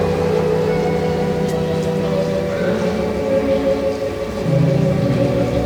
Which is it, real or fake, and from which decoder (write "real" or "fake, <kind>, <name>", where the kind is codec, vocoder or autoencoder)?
real